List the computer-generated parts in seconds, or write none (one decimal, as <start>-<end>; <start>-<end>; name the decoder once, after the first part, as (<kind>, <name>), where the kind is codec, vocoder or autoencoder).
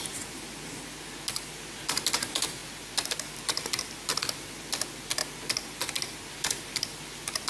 none